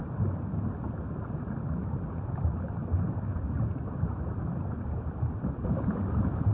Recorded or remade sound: recorded